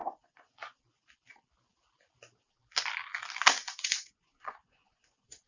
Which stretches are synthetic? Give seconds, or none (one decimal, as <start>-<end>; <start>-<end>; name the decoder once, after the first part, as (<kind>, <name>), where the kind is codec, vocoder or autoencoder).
0.0-0.8 (vocoder, Vocos); 3.6-5.5